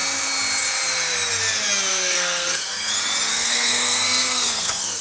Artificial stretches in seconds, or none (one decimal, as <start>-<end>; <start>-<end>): 1.9-2.9; 3.3-5.0